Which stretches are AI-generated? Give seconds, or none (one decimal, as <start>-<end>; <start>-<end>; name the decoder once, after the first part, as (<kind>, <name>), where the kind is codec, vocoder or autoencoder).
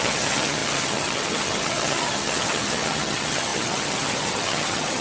0.0-5.0 (vocoder, HiFi-GAN)